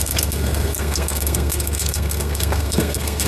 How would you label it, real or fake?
fake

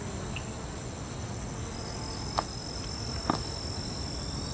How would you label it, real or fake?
real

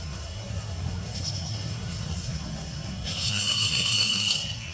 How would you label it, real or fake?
fake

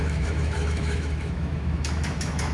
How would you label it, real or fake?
fake